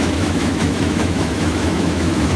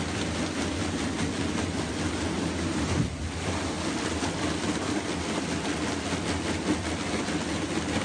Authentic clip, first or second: second